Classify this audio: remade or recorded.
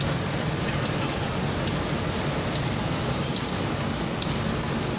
recorded